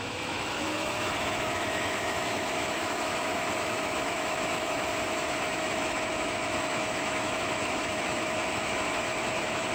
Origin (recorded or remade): remade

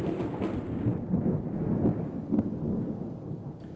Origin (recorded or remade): recorded